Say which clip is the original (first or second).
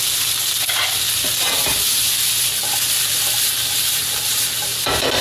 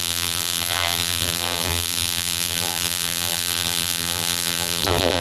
first